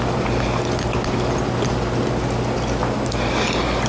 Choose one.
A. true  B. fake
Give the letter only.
A